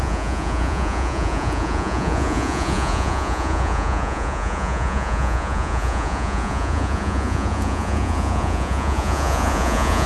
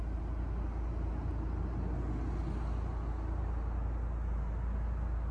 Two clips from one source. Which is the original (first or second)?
second